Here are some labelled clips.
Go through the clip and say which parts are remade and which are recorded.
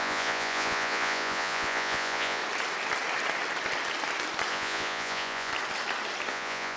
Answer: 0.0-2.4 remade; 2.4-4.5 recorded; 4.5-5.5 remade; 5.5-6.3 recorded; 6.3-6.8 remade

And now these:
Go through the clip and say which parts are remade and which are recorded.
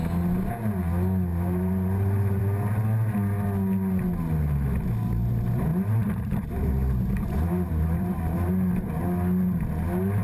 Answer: 0.0-1.3 recorded; 1.3-2.4 remade; 2.4-5.7 recorded; 5.7-8.5 remade; 8.5-10.2 recorded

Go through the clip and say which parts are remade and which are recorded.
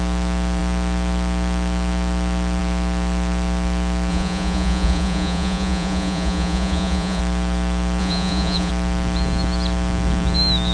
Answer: 0.0-4.1 recorded; 4.1-7.2 remade; 7.2-8.0 recorded; 8.0-8.7 remade; 8.7-10.7 recorded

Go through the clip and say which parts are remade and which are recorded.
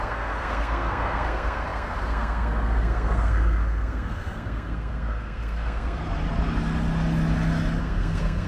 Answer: 0.0-6.0 remade; 6.0-7.8 recorded; 7.8-8.5 remade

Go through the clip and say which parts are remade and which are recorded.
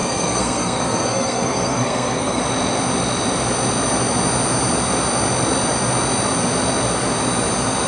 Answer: 0.0-2.4 remade; 2.4-7.9 recorded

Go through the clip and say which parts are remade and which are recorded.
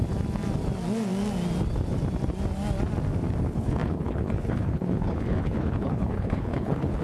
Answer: 0.0-3.4 recorded; 3.4-7.0 remade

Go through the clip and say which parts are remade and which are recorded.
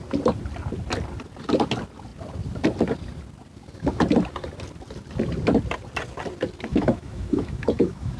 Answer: 0.0-6.7 recorded; 6.7-8.2 remade